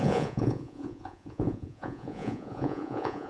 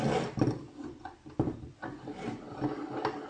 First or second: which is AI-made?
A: first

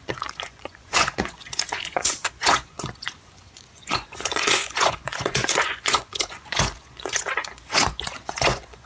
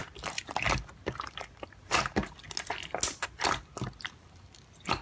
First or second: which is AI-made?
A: first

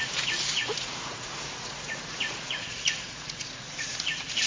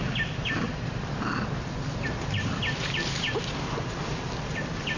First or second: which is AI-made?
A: first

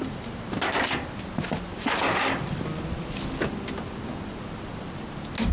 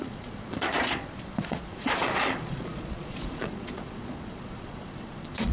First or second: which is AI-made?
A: second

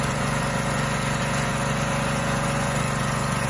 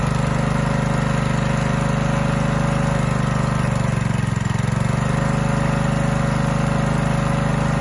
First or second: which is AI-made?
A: first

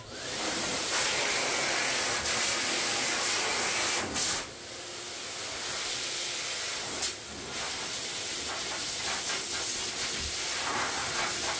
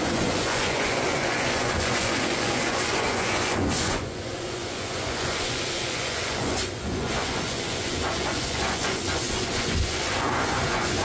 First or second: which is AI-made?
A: second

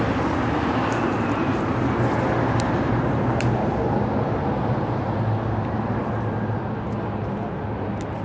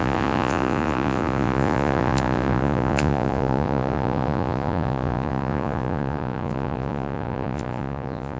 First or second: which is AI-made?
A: second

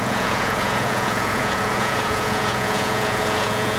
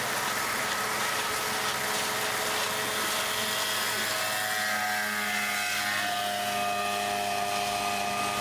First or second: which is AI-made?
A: first